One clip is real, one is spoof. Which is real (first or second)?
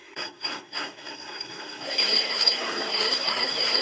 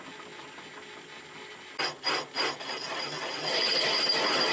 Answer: second